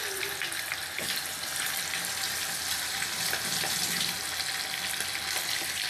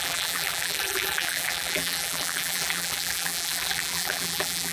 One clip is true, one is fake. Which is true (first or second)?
first